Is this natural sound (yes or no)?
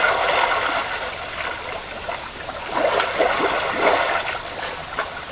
yes